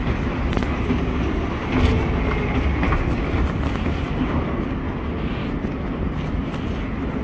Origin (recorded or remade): recorded